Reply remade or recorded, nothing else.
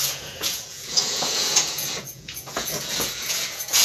remade